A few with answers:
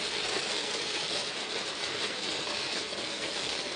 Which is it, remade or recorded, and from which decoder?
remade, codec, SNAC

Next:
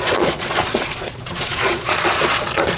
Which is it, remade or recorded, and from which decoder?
remade, vocoder, Vocos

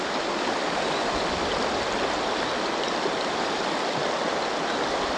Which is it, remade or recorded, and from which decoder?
recorded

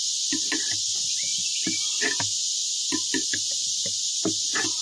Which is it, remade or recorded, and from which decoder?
recorded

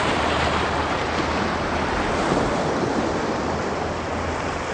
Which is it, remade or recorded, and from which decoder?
recorded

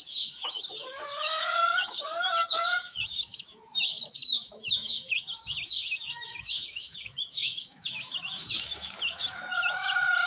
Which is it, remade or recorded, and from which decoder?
remade, autoencoder, DAC-VAE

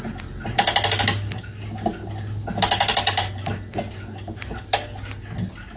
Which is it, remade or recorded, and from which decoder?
recorded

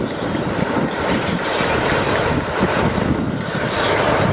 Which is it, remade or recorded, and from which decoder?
recorded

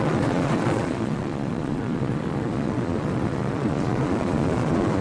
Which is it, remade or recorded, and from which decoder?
remade, vocoder, Vocos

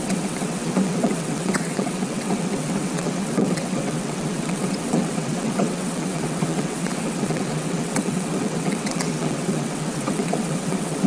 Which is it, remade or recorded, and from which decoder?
remade, vocoder, WaveNeXt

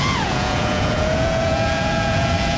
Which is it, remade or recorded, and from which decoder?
remade, vocoder, Vocos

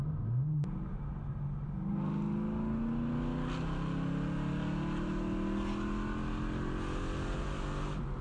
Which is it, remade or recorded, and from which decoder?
recorded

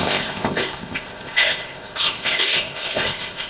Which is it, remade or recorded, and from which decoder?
remade, codec, ZipCodec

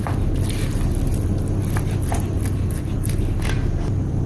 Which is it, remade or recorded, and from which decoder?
recorded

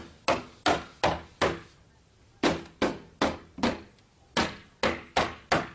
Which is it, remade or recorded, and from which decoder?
recorded